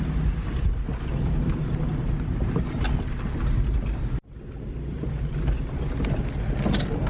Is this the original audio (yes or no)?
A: yes